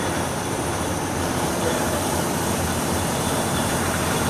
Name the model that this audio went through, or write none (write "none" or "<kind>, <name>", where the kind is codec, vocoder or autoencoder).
vocoder, BigVGAN v2